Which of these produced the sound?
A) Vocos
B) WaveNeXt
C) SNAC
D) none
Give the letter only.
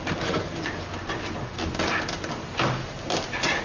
D